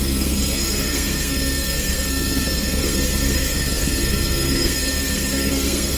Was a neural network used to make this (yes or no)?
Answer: yes